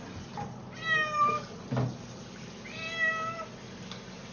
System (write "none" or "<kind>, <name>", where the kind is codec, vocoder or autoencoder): none